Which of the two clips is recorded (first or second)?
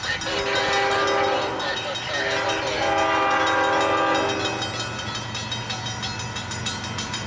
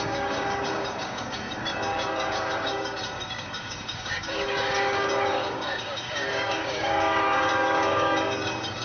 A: first